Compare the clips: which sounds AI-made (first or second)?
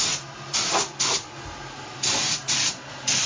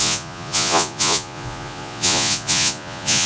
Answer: second